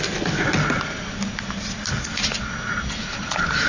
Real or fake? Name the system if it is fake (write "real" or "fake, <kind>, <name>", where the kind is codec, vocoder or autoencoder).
real